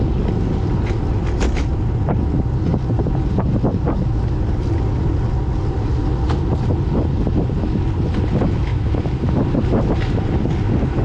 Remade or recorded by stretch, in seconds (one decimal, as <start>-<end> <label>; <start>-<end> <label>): 0.0-11.0 recorded